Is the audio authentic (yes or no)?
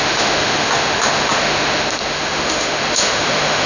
no